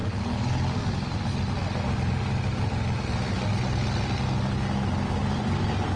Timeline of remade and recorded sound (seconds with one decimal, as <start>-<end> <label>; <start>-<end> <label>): 0.0-5.2 recorded; 5.2-6.0 remade